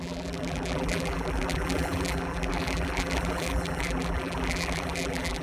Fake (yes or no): yes